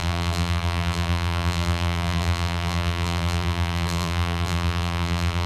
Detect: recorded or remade remade